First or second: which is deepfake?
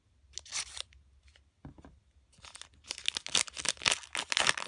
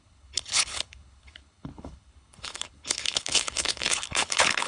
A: second